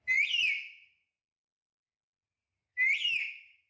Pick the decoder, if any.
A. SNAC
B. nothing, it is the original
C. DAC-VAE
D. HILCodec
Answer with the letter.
B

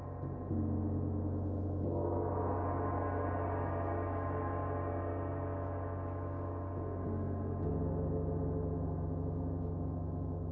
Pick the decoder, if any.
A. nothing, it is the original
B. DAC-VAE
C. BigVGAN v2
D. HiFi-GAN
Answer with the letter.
A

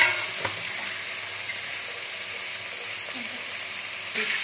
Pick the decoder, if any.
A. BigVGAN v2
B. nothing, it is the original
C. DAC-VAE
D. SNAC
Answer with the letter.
B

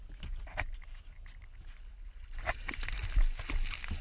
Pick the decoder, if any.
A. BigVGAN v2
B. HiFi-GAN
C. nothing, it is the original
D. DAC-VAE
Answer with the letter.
C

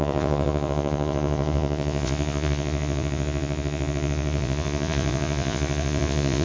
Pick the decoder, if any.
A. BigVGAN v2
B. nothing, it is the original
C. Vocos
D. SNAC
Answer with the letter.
C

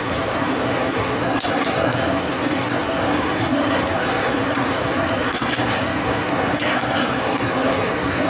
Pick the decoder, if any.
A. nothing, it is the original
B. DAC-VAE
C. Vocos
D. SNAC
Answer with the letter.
D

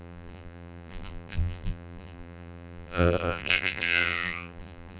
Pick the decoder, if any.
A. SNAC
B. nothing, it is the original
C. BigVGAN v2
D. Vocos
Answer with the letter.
C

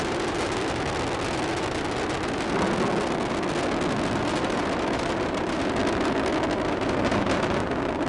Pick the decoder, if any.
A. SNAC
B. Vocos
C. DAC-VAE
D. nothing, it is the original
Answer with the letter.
D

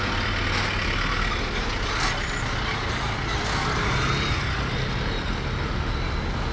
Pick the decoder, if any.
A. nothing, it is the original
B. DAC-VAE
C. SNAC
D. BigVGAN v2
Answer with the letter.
A